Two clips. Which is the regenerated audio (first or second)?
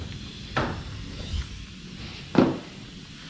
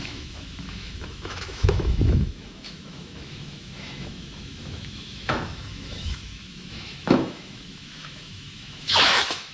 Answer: second